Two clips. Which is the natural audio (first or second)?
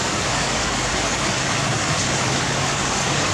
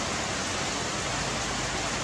second